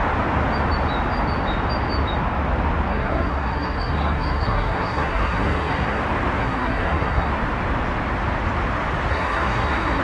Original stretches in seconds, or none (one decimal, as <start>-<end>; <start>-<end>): 0.0-2.9; 6.0-6.4; 7.3-9.1